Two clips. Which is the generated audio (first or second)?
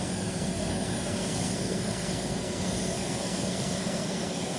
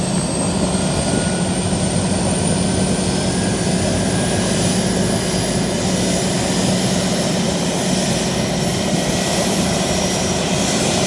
first